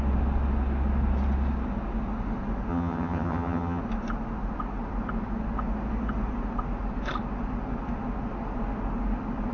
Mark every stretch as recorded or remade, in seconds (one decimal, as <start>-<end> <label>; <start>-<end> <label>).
0.0-2.7 recorded; 2.7-3.8 remade; 3.8-9.5 recorded